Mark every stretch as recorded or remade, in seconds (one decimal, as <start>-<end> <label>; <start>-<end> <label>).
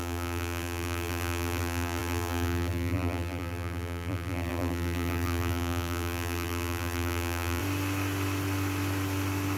0.0-7.6 remade; 7.6-9.6 recorded